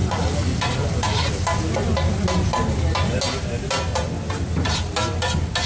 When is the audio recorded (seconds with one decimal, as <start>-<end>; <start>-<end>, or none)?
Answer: 0.0-5.7